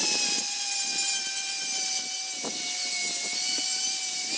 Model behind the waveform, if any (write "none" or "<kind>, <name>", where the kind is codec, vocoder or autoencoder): none